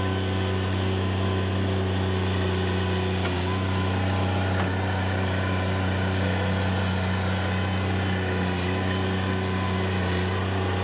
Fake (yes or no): no